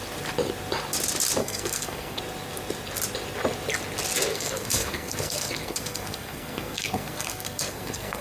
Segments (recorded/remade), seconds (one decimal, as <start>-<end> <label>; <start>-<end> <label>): 0.0-1.4 recorded; 1.4-2.2 remade; 2.2-4.3 recorded; 4.3-8.2 remade